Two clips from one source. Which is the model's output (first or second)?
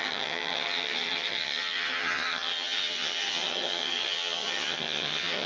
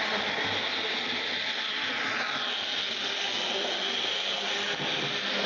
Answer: first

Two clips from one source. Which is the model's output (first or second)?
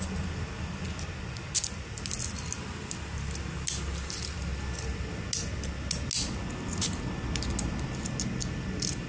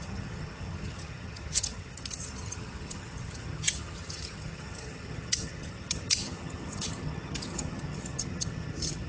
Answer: second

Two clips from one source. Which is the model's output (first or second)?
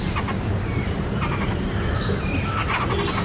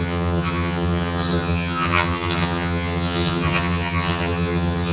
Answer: second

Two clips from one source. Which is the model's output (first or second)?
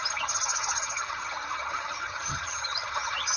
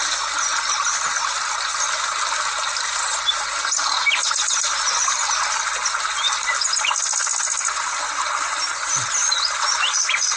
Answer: first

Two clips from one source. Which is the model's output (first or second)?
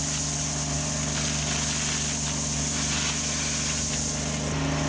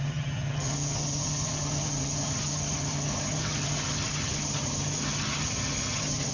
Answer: second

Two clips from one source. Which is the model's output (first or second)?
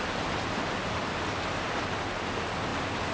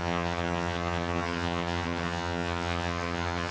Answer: second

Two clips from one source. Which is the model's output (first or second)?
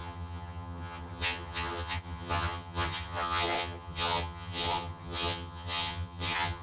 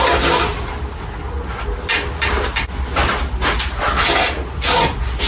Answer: first